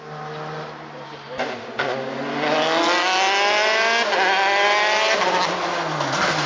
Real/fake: real